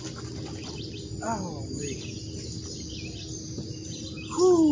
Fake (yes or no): no